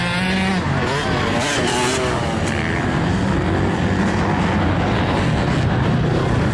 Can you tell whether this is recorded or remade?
recorded